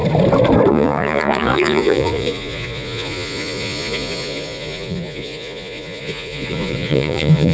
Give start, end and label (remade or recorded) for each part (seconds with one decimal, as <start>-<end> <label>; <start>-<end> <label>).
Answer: 0.0-0.7 recorded; 0.7-7.5 remade